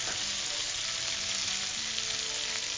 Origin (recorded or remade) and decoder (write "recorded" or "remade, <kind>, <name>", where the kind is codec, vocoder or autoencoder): recorded